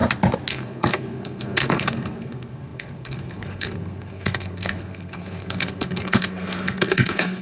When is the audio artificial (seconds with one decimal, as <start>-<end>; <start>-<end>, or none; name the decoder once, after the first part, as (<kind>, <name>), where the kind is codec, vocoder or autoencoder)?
0.5-7.4 (codec, SNAC)